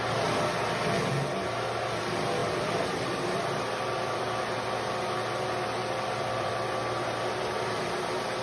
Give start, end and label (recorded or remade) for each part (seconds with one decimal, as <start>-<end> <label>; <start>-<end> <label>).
0.0-2.4 recorded; 2.4-4.4 remade; 4.4-5.8 recorded; 5.8-6.5 remade; 6.5-8.4 recorded